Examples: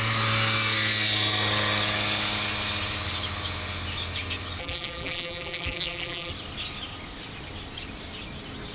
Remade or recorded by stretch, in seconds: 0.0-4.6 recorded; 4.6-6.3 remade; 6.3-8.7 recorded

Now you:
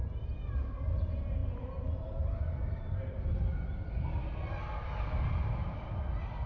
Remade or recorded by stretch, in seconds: 0.0-6.5 recorded

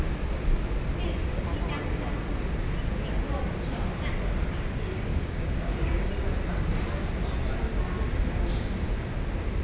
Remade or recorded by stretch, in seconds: 0.0-5.1 recorded; 5.1-6.1 remade; 6.1-9.6 recorded